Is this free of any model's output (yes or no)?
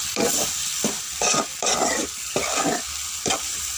yes